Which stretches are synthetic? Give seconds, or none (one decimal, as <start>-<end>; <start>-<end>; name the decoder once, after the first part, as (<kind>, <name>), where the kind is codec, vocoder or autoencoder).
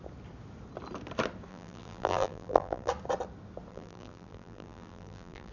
1.5-2.9 (vocoder, BigVGAN v2); 3.7-5.5